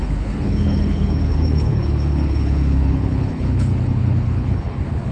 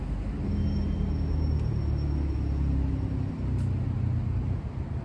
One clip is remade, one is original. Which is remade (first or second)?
first